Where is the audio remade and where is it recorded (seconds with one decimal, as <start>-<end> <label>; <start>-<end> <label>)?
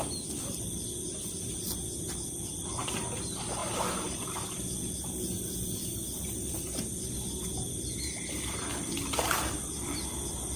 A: 0.0-10.6 recorded